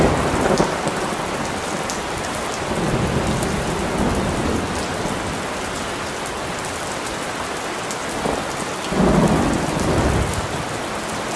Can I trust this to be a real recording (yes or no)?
yes